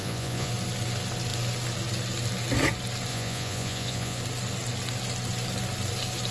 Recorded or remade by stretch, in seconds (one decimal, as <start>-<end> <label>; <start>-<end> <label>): 0.0-0.5 remade; 0.5-3.1 recorded; 3.1-4.2 remade; 4.2-6.3 recorded